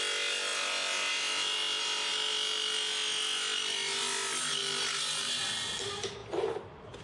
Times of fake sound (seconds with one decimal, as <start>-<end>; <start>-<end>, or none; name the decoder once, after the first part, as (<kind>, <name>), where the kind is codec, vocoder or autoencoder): none